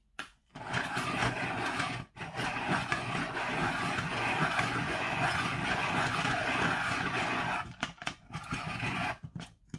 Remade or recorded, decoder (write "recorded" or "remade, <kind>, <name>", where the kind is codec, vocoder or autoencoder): remade, vocoder, Vocos